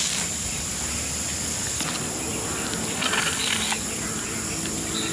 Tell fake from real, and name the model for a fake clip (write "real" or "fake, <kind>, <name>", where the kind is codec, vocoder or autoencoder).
real